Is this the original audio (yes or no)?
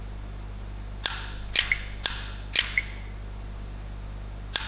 yes